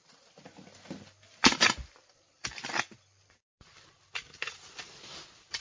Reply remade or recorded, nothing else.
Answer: remade